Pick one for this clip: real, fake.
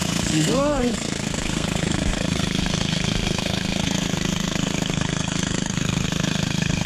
fake